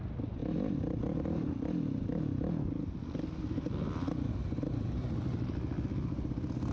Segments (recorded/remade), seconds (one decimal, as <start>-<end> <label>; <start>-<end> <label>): 0.0-6.7 recorded